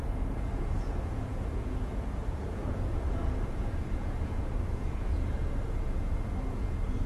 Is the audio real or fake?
fake